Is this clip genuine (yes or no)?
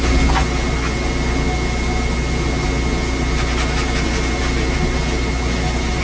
yes